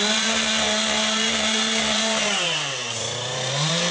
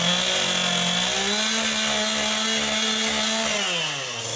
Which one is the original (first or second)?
second